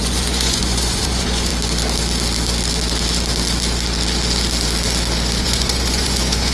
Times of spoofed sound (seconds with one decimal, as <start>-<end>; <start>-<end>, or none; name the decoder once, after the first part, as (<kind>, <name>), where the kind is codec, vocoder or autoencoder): 0.0-1.5 (vocoder, Vocos); 5.4-6.5